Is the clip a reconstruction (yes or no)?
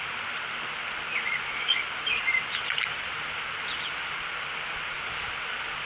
yes